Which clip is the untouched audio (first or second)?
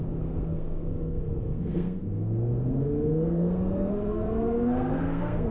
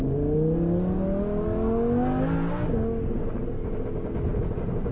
second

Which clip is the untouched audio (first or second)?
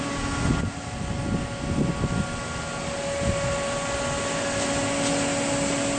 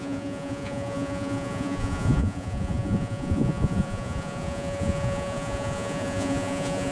first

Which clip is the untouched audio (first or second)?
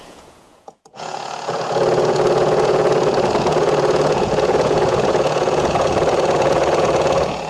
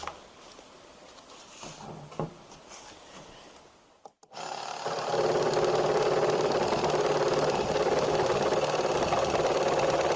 second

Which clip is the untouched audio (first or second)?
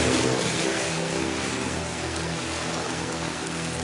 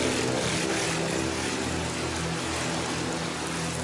second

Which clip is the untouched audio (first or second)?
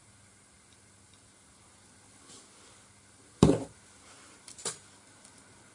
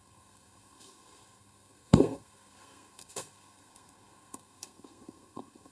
first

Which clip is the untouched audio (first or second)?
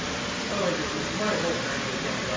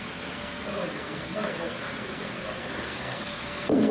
first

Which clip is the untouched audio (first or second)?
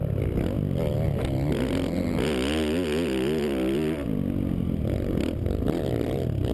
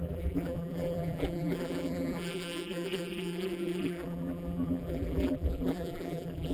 first